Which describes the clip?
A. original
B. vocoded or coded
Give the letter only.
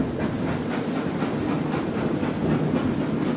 A